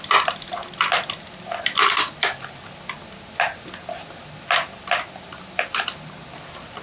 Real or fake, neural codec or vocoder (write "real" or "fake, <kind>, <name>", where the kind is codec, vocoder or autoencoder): real